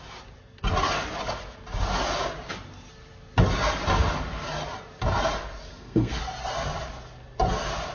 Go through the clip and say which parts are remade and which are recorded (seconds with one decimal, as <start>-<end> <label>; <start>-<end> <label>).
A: 0.0-5.7 recorded; 5.7-6.2 remade; 6.2-7.9 recorded